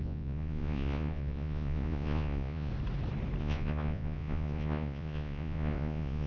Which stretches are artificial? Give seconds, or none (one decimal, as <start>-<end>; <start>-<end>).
0.0-2.7; 3.4-6.3